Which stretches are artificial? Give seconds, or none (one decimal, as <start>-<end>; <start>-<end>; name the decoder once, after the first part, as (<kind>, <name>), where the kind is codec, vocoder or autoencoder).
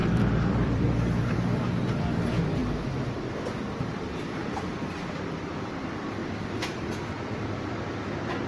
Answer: 0.0-2.6 (vocoder, BigVGAN v2); 3.3-8.5